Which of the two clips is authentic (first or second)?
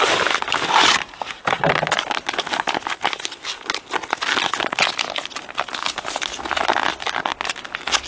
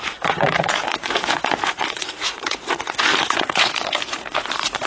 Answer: first